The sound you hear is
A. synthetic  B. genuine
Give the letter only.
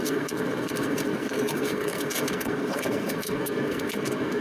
A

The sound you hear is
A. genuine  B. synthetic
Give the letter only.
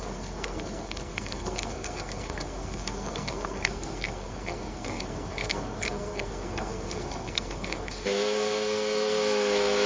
B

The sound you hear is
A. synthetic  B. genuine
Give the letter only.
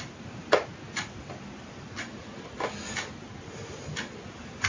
B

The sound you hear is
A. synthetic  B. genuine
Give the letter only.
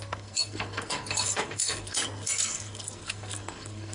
A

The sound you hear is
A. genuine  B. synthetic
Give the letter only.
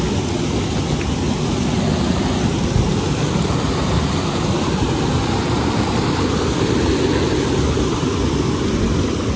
A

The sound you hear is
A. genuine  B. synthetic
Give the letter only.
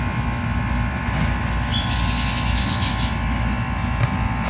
A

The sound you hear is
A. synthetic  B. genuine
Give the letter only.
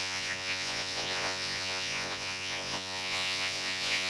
A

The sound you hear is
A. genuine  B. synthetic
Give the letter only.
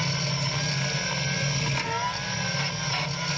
A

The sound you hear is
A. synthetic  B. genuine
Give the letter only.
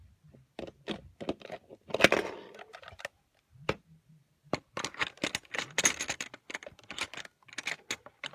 B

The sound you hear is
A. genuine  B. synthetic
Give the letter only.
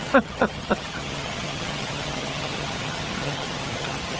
B